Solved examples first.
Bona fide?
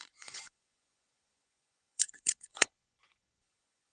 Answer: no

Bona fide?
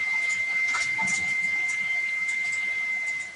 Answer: yes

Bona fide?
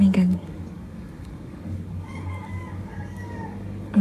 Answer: no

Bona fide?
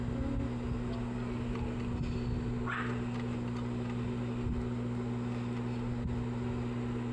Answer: yes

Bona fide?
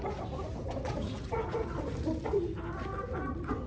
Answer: yes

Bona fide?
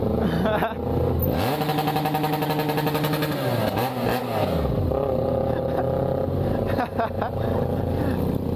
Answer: yes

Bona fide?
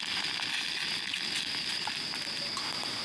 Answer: yes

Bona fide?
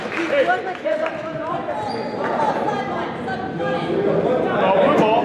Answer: yes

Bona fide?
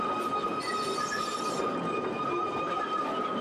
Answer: yes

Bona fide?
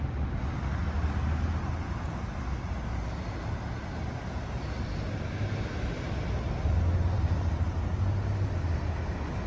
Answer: yes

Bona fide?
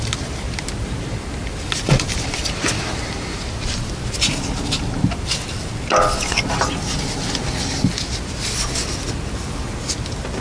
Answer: yes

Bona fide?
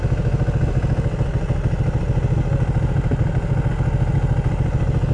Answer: yes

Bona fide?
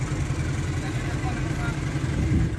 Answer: yes